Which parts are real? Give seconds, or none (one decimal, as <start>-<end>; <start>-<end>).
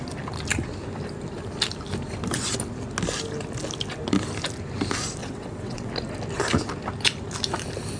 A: 0.0-5.2; 5.9-8.0